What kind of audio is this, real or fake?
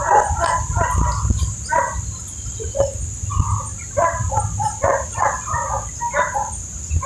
real